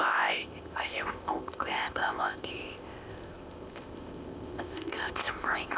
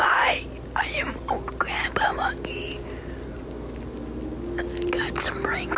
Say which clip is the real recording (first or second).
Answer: second